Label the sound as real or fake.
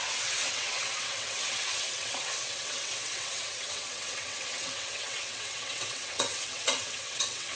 fake